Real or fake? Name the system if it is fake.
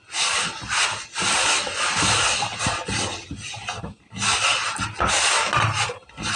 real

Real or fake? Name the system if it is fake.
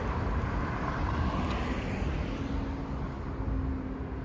real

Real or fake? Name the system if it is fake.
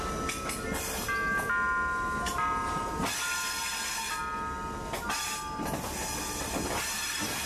real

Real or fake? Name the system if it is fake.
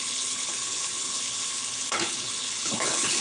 fake, codec, HILCodec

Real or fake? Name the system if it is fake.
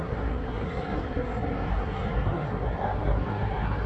fake, codec, SNAC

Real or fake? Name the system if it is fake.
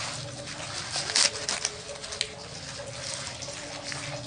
real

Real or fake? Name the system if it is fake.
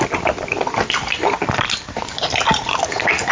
real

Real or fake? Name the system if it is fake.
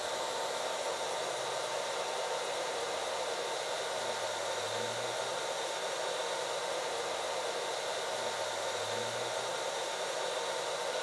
real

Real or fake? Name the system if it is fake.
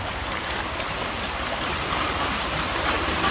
real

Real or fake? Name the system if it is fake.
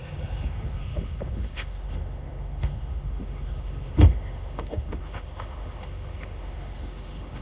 fake, autoencoder, DAC-VAE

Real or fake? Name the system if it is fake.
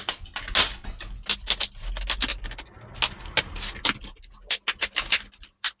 real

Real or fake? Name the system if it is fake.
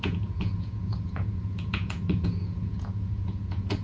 fake, vocoder, Vocos